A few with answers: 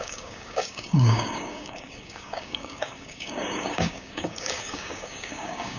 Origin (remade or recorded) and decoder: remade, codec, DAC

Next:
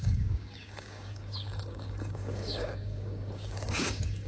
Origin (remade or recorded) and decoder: remade, codec, DAC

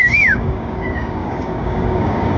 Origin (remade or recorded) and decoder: remade, codec, DAC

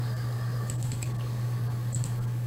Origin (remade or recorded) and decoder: remade, codec, DAC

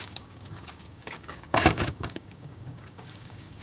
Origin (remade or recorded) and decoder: remade, codec, DAC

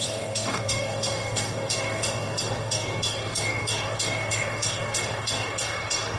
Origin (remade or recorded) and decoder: remade, codec, DAC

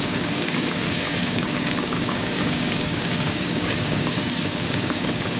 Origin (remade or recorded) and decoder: remade, codec, DAC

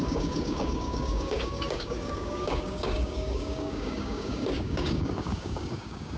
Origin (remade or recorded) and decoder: remade, codec, DAC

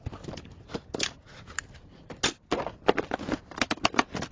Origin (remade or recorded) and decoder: recorded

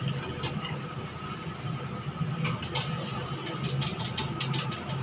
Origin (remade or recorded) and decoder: recorded